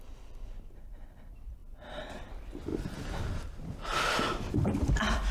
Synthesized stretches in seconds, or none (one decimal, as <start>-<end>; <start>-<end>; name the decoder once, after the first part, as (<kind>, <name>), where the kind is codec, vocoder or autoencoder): 0.0-1.6 (vocoder, BigVGAN v2); 2.3-2.7; 4.5-5.3